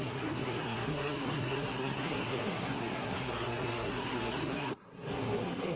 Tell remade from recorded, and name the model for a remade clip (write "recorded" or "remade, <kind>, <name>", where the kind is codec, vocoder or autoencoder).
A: remade, codec, SNAC